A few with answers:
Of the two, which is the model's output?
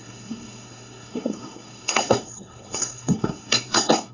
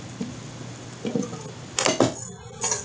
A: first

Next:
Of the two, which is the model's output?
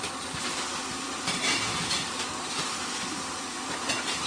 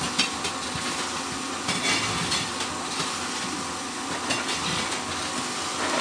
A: first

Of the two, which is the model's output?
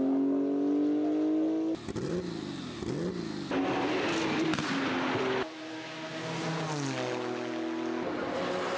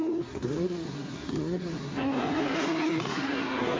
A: second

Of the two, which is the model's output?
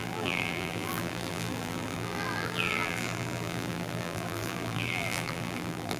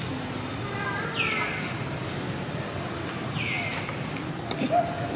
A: first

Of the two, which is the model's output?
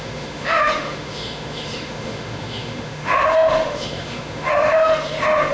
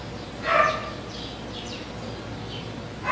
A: first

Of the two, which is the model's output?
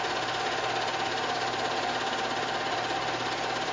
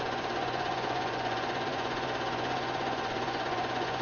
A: second